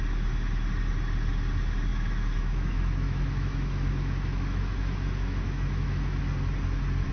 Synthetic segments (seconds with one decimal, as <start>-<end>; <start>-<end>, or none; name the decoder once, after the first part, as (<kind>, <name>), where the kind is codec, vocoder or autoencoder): 1.9-6.2 (autoencoder, DAC-VAE)